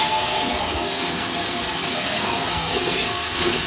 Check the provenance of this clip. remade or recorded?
remade